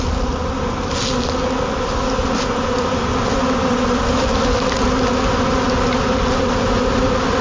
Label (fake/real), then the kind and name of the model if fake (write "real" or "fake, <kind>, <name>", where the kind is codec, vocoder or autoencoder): real